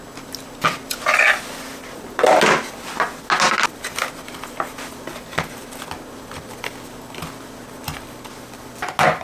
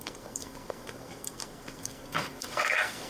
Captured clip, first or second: first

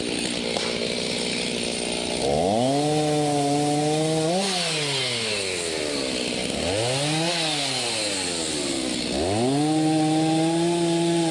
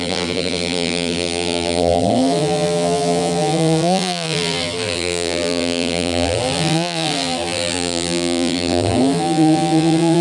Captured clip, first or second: first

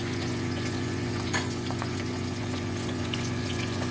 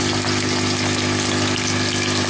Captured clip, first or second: second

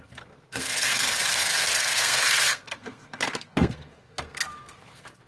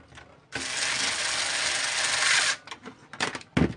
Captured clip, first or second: second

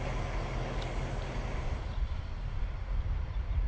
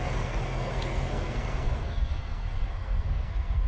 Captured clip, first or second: first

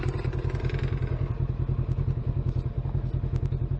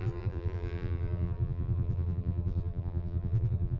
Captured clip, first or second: first